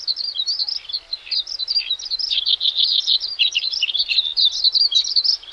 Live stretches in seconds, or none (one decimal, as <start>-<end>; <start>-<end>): 0.0-5.5